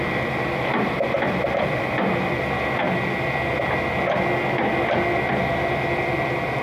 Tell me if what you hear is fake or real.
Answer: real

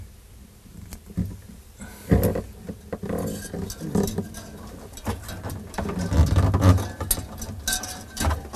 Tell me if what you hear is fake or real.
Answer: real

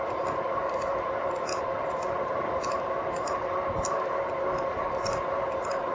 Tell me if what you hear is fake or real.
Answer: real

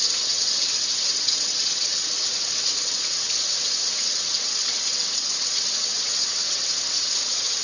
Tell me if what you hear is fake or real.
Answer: fake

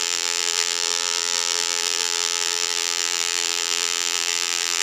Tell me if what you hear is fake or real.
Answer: fake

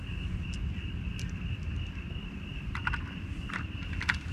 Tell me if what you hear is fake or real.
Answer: real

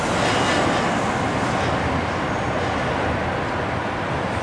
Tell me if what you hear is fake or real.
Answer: real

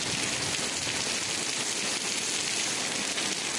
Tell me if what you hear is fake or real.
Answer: real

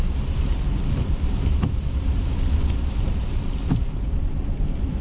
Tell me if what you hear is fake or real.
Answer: fake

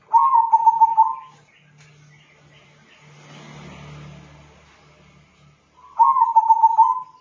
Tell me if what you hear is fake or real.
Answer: real